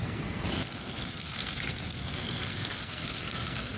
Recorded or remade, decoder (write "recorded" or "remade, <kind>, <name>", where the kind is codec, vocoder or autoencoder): remade, codec, SNAC